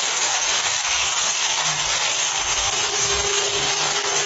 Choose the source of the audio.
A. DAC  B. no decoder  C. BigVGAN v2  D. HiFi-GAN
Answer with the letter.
A